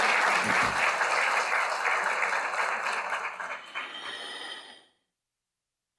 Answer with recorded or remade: recorded